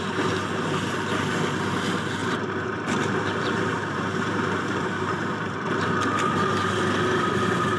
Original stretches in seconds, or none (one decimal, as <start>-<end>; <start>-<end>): 0.0-2.2; 5.9-7.8

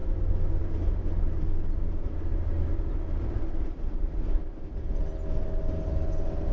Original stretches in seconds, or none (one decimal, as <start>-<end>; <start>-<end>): 0.0-6.5